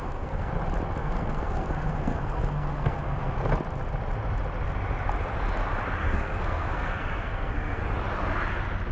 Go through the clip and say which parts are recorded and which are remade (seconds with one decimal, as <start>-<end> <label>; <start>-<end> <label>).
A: 0.0-0.5 remade; 0.5-1.0 recorded; 1.0-3.5 remade; 3.5-6.0 recorded; 6.0-7.8 remade; 7.8-8.9 recorded